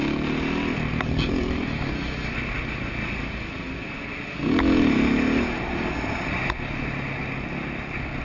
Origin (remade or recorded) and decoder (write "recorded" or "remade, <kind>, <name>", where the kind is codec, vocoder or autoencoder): recorded